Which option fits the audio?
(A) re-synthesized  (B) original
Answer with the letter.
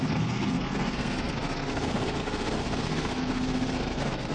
A